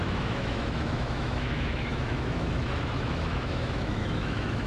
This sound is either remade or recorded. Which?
remade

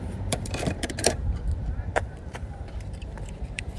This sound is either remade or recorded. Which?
remade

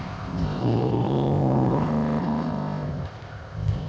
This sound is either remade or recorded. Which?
remade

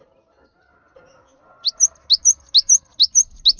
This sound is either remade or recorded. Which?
recorded